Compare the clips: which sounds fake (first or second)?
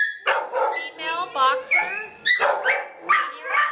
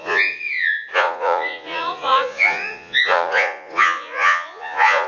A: second